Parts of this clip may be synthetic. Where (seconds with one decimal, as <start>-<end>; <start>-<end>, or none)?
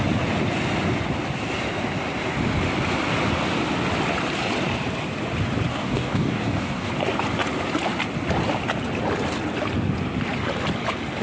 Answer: 5.7-6.9